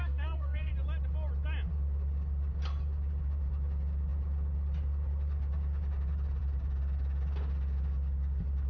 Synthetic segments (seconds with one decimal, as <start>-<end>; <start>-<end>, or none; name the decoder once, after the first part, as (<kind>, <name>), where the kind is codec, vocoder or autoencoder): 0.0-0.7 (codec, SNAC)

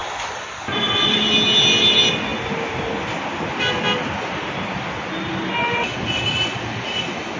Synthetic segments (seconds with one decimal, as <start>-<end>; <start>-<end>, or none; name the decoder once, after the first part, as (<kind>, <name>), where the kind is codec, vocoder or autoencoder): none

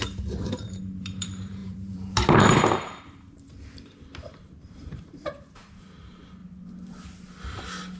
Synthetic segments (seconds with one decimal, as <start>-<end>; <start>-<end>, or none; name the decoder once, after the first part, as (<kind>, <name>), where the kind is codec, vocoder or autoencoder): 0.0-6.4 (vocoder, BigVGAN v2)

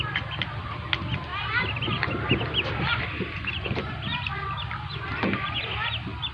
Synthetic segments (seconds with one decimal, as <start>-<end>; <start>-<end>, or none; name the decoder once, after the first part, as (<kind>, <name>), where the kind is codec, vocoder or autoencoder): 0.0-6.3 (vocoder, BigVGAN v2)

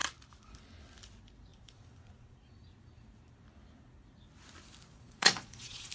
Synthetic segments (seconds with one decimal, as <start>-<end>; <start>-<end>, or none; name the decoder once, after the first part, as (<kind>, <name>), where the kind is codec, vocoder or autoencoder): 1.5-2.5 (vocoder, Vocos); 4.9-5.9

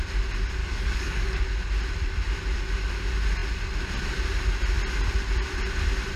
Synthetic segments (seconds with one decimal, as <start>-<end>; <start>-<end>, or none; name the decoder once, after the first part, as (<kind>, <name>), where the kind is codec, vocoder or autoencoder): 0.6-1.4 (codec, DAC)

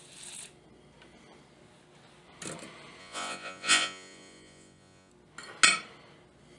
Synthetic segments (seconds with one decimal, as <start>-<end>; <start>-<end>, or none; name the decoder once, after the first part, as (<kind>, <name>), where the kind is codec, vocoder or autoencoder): 3.0-5.1 (vocoder, Vocos)

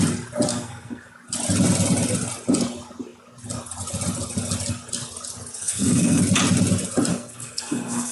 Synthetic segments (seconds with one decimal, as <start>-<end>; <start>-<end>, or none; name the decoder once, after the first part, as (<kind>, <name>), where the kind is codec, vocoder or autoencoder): 0.5-1.1 (codec, SNAC); 5.6-6.2; 7.1-8.1